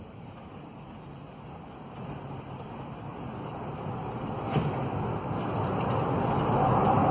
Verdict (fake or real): real